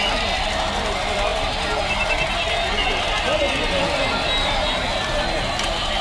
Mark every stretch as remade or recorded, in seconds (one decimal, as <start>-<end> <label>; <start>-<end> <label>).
0.0-6.0 recorded